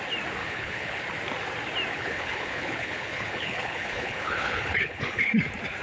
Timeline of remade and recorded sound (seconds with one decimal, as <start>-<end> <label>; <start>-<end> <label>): 0.0-0.4 recorded; 0.4-1.0 remade; 1.0-1.9 recorded; 1.9-5.3 remade; 5.3-5.8 recorded